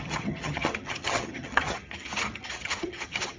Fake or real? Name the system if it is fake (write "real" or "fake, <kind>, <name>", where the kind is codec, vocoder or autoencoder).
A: fake, vocoder, HiFi-GAN